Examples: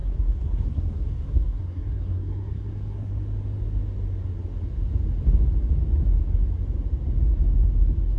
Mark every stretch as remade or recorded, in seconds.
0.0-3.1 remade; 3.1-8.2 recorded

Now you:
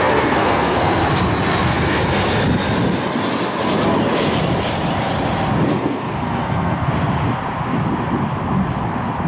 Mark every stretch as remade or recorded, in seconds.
0.0-1.0 remade; 1.0-1.6 recorded; 1.6-2.0 remade; 2.0-5.7 recorded; 5.7-6.9 remade; 6.9-9.3 recorded

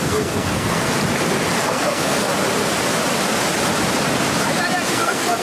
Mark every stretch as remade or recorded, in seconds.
0.0-0.9 remade; 0.9-1.6 recorded; 1.6-2.3 remade; 2.3-4.9 recorded; 4.9-5.4 remade

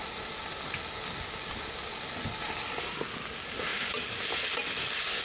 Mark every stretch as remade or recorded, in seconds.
0.0-5.2 recorded

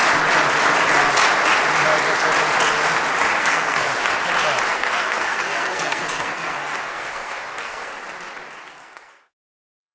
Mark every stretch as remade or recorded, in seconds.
0.0-3.4 recorded; 3.4-3.9 remade; 3.9-4.7 recorded; 4.7-7.9 remade; 7.9-8.7 recorded; 8.7-9.9 remade

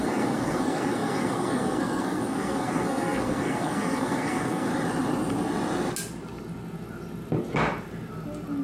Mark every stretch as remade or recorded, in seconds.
0.0-4.7 remade; 4.7-8.6 recorded

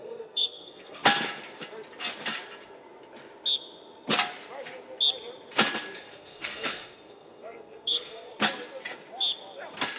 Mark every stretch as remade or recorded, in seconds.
0.0-1.0 remade; 1.0-6.0 recorded; 6.0-8.3 remade; 8.3-10.0 recorded

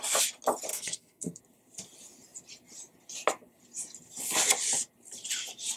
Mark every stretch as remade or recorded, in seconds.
0.0-0.7 recorded; 0.7-1.4 remade; 1.4-5.8 recorded